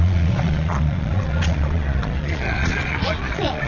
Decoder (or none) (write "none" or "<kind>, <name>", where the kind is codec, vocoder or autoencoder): vocoder, Vocos